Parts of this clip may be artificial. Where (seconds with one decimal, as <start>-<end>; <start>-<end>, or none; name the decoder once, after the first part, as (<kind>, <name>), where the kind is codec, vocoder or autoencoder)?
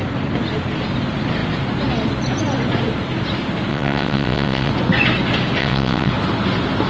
3.7-4.7 (vocoder, WaveNeXt); 5.6-6.1